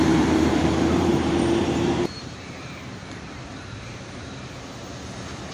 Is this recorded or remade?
remade